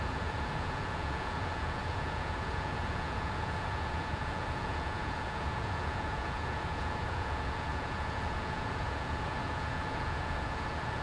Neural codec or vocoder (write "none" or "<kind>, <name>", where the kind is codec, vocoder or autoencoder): vocoder, Vocos